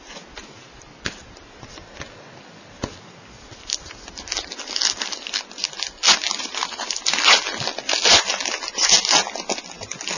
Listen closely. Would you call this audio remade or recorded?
recorded